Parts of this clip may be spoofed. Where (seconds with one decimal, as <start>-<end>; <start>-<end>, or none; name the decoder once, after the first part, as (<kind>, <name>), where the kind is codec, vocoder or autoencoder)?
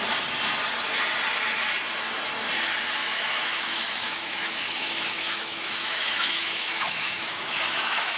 3.0-8.2 (autoencoder, DAC-VAE)